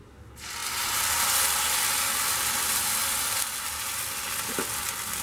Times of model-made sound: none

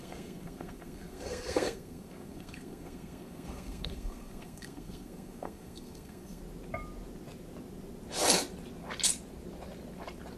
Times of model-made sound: 0.0-6.4 (codec, SNAC)

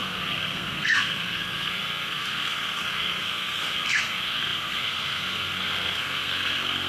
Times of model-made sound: 0.0-6.9 (codec, SNAC)

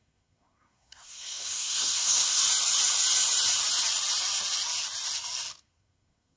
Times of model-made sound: 0.0-2.4 (codec, SNAC); 5.6-6.4

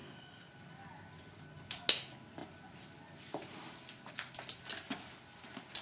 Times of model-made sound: 0.0-0.5 (codec, SNAC)